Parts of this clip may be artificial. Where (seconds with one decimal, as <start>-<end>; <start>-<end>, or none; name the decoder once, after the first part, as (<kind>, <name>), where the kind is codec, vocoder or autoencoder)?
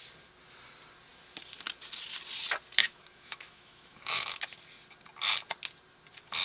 2.8-4.4 (autoencoder, DAC-VAE)